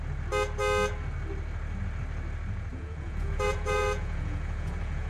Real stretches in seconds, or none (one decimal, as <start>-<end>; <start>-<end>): 0.0-2.7